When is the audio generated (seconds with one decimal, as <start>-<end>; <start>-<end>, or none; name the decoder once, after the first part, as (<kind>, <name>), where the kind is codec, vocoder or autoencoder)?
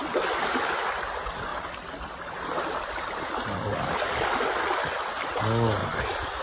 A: 1.5-5.3 (vocoder, BigVGAN v2); 5.8-6.4